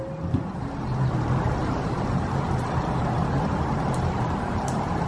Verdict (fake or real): fake